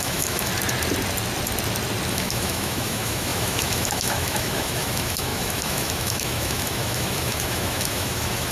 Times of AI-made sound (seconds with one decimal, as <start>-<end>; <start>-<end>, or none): 0.0-0.5; 2.1-8.5